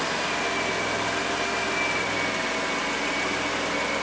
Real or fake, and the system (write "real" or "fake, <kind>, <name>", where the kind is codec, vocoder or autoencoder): real